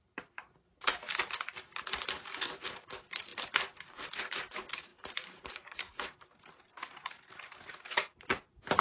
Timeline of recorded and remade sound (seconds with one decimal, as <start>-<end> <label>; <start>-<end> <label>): 0.0-0.9 remade; 0.9-2.4 recorded; 2.4-3.3 remade; 3.3-4.2 recorded; 4.2-8.8 remade